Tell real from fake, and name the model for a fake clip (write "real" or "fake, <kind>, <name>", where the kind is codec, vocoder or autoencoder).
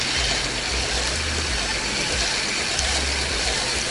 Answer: real